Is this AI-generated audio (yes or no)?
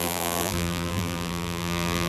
yes